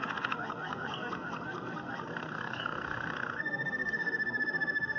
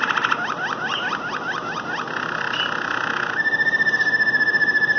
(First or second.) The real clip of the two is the second